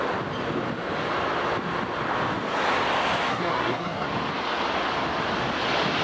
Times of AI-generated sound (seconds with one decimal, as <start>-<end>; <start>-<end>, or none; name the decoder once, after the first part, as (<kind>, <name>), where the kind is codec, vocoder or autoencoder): 3.3-4.1 (codec, SNAC)